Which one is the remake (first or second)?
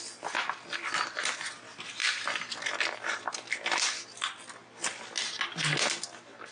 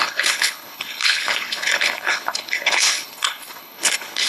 second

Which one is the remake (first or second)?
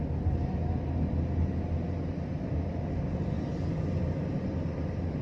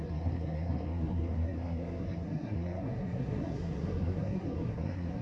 second